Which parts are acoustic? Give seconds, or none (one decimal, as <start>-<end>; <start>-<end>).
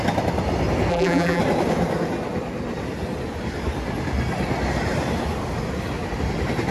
0.0-0.9; 1.4-6.7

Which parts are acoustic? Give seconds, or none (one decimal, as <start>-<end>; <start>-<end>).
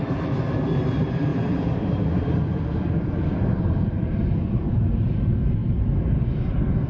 none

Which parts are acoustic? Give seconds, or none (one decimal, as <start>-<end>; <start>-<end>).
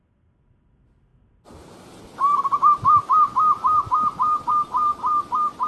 0.0-5.7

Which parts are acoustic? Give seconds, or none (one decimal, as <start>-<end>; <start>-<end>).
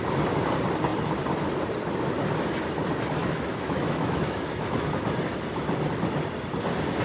0.0-3.2; 5.0-7.0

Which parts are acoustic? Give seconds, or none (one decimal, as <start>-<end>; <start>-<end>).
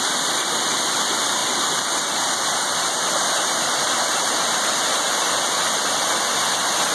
0.0-6.9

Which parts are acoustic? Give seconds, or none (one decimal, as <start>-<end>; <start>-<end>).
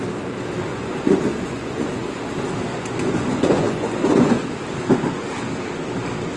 0.0-0.7; 2.2-2.7; 4.4-6.4